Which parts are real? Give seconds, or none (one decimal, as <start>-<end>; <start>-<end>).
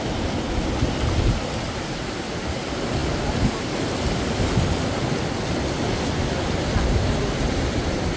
0.0-8.2